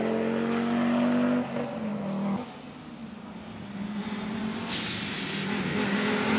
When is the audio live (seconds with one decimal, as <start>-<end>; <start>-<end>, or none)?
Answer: 0.0-6.4